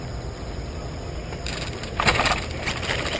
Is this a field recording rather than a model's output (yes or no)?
yes